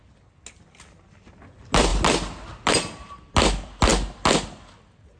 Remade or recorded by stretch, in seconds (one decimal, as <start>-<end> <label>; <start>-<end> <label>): 0.0-5.2 recorded